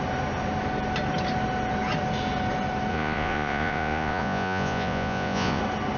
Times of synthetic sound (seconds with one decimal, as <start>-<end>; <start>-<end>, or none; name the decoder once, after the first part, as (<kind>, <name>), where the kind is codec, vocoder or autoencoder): 2.9-5.6 (vocoder, Vocos)